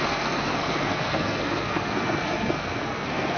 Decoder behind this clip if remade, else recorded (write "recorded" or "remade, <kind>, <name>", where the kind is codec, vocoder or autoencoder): remade, codec, SNAC